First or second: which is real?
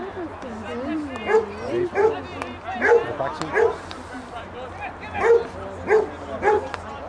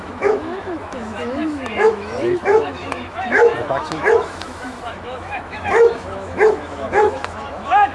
first